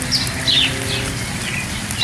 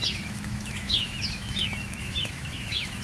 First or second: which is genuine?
first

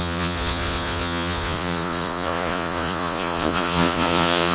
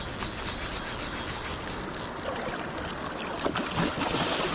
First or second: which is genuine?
second